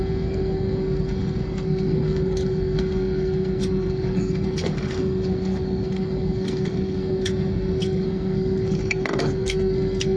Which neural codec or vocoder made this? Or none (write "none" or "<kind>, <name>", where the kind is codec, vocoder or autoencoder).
codec, SNAC